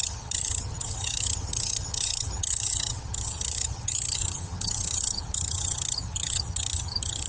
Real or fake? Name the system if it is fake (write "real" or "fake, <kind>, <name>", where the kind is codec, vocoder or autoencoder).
fake, vocoder, HiFi-GAN